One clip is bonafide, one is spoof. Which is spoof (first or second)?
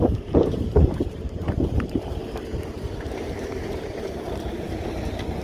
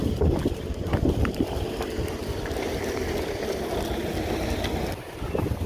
first